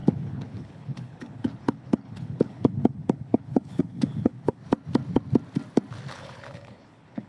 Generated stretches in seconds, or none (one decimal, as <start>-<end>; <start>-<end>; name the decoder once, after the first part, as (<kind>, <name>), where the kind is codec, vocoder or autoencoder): 0.0-4.6 (codec, HILCodec); 6.1-7.3